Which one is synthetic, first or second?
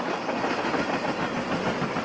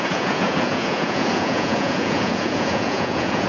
second